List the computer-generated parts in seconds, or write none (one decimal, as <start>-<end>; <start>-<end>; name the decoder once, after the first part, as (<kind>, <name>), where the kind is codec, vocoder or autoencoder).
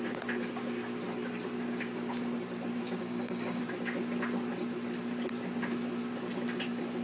3.0-3.6 (codec, DAC)